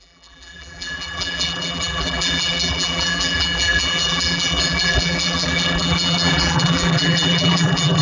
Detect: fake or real fake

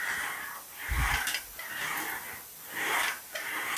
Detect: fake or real real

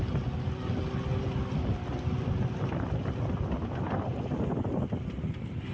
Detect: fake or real real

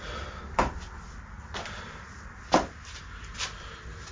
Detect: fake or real real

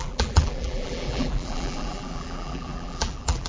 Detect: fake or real fake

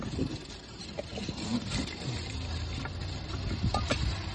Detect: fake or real real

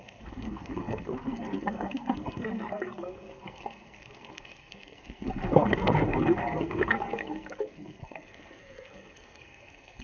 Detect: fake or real fake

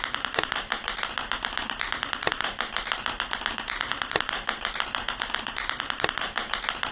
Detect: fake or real real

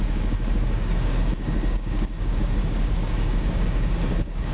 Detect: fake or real fake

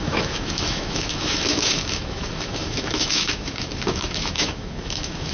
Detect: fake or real fake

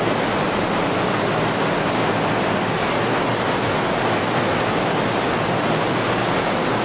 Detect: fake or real real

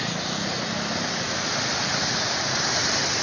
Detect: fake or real real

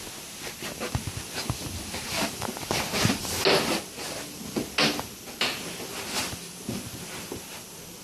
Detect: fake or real real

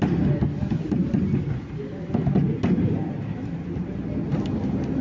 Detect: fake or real real